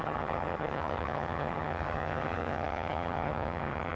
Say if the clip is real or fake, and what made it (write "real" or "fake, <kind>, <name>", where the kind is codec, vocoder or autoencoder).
fake, vocoder, HiFi-GAN